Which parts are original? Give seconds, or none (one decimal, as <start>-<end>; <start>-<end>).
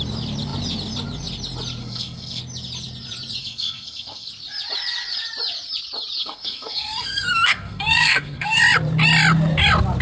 0.0-1.8; 2.4-3.4; 4.3-6.2; 8.6-10.0